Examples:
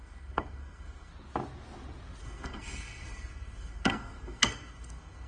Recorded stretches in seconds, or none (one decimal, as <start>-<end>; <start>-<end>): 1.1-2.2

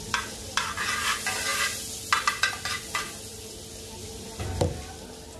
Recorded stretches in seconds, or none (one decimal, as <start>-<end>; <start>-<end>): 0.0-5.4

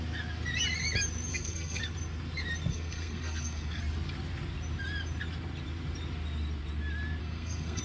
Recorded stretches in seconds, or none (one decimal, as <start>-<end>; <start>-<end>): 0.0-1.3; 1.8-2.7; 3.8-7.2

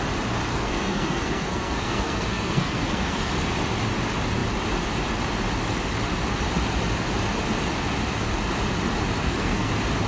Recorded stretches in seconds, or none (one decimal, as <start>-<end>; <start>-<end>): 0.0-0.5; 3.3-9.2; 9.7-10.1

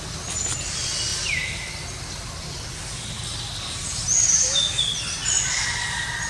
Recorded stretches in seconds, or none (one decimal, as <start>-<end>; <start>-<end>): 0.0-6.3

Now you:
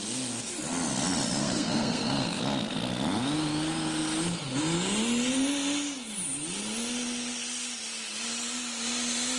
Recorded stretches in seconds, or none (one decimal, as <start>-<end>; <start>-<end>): 0.0-1.4; 2.4-9.4